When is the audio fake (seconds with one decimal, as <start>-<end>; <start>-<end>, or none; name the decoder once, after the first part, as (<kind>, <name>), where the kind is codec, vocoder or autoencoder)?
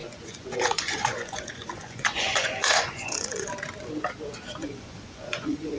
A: 0.0-3.5 (vocoder, Vocos); 4.6-5.8